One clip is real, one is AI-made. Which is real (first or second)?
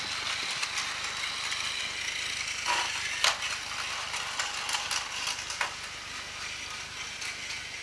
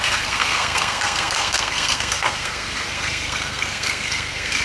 first